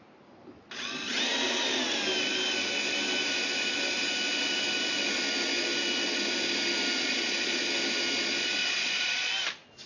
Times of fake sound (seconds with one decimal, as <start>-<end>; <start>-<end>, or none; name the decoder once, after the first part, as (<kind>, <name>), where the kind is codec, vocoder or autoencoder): 7.0-7.6 (vocoder, Vocos); 8.6-9.3